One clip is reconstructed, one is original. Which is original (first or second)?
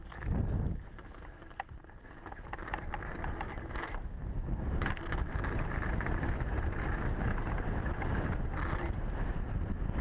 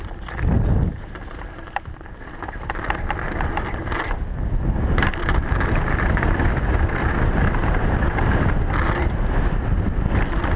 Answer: first